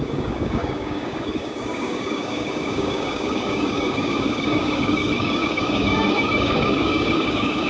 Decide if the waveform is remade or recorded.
remade